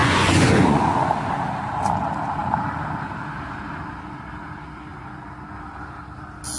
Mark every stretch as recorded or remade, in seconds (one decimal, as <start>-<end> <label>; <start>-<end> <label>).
0.0-1.1 remade; 1.1-6.6 recorded